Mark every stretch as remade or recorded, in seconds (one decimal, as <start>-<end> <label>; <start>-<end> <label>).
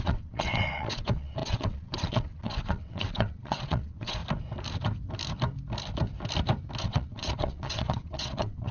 0.0-4.2 remade; 4.2-6.8 recorded; 6.8-8.7 remade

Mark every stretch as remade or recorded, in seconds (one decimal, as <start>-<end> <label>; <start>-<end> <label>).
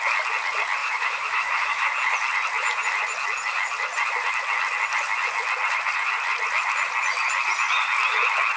0.0-0.8 recorded; 0.8-1.9 remade; 1.9-8.6 recorded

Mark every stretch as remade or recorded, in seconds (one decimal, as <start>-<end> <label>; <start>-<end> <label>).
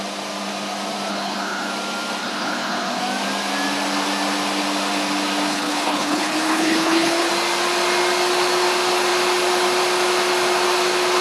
0.0-1.1 recorded; 1.1-1.7 remade; 1.7-2.2 recorded; 2.2-3.0 remade; 3.0-5.5 recorded; 5.5-7.3 remade; 7.3-11.2 recorded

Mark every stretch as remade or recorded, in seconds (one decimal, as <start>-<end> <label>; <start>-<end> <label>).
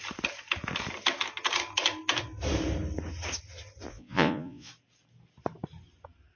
0.0-3.9 recorded; 3.9-4.7 remade; 4.7-6.4 recorded